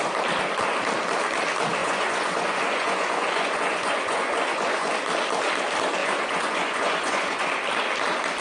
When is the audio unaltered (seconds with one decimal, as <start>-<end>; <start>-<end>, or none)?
0.0-1.8; 4.9-6.0; 7.5-8.4